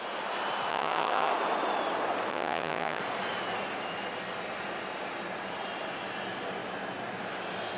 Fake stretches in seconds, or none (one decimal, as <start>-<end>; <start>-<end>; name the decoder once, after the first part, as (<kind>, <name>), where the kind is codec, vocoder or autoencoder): 0.7-1.3 (vocoder, HiFi-GAN); 2.3-3.0